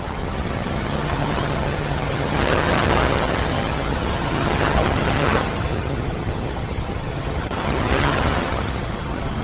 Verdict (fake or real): fake